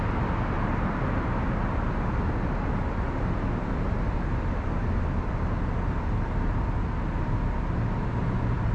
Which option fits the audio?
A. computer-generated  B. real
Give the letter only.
B